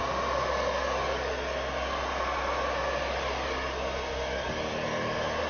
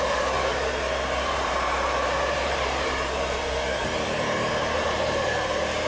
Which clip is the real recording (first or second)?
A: first